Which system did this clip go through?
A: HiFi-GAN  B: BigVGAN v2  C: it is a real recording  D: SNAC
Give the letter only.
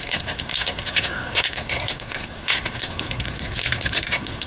D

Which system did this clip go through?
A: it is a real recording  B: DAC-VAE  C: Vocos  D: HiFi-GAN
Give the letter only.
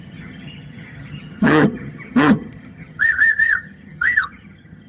D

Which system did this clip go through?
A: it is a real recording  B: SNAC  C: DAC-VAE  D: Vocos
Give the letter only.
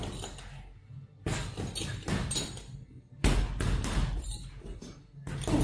A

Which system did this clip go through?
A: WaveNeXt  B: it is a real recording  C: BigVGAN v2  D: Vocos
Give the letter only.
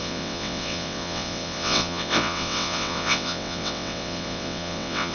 A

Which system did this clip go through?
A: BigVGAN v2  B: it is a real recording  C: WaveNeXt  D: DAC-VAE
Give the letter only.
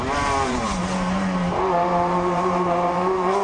A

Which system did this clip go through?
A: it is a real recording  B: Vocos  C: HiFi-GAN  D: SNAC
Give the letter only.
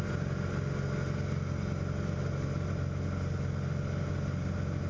A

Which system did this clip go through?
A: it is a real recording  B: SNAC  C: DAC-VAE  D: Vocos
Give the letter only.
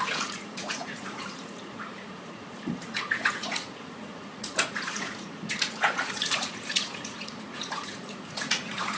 D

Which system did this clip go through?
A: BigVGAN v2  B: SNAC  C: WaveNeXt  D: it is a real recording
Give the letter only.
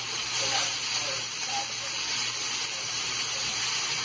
D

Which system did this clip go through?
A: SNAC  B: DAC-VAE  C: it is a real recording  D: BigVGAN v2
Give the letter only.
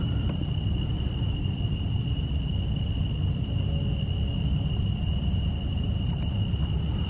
C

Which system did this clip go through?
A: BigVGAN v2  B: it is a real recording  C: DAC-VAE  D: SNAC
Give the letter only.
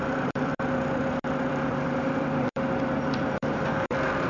A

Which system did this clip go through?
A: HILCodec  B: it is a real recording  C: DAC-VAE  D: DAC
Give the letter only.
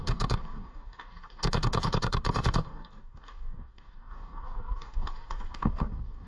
D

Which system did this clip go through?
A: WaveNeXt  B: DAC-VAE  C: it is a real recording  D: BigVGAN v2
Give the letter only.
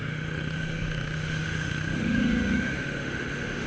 B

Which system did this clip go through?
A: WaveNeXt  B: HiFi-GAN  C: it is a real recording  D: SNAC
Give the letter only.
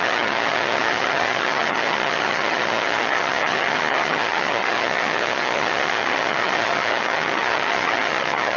B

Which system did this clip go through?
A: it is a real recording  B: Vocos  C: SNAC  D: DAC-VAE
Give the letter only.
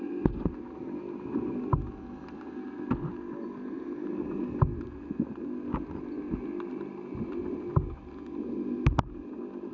A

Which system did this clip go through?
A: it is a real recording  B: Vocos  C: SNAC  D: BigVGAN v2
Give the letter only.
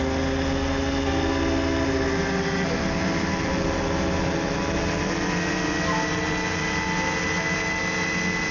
A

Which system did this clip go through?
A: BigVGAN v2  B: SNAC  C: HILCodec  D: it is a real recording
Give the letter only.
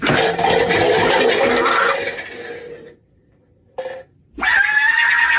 D